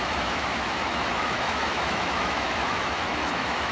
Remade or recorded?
remade